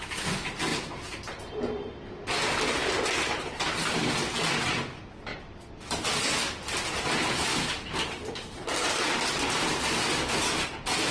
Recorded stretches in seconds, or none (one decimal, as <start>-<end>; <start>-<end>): 0.0-11.1